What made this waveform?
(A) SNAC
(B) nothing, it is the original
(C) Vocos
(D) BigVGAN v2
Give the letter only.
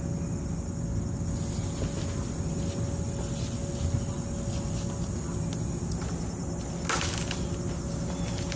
B